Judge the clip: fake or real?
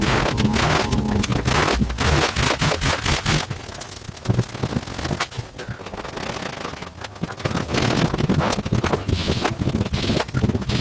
real